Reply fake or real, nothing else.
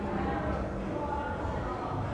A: real